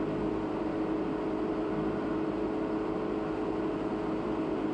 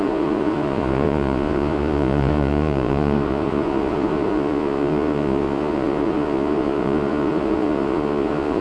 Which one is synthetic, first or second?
second